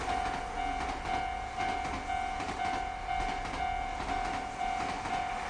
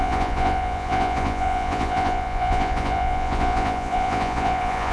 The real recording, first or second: first